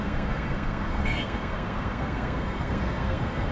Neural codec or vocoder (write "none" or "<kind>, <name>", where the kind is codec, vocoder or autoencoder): codec, SNAC